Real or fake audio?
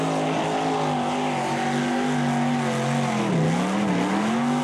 real